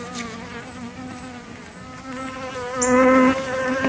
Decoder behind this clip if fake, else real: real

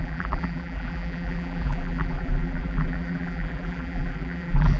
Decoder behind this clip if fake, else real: fake, vocoder, BigVGAN v2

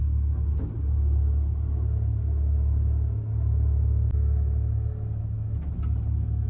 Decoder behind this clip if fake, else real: real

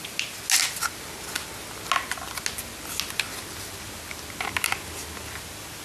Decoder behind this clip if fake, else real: real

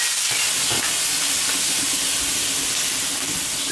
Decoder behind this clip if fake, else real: real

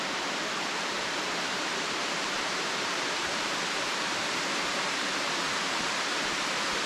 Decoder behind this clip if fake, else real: fake, vocoder, BigVGAN v2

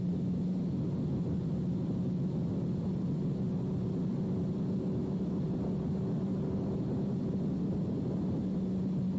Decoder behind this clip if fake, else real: real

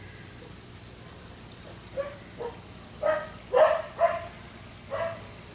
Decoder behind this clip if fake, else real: real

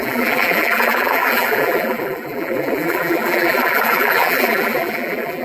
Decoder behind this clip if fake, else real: fake, vocoder, BigVGAN v2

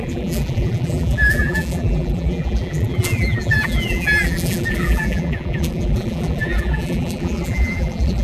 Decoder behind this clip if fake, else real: fake, vocoder, BigVGAN v2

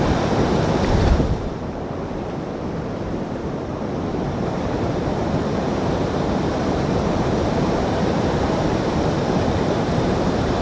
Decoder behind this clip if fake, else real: fake, vocoder, BigVGAN v2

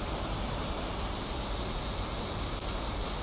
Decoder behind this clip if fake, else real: real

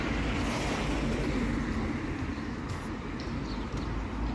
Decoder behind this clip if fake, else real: real